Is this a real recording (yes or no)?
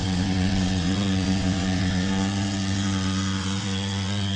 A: no